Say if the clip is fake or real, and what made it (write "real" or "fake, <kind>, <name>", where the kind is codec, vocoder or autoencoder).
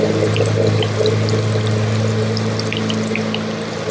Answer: real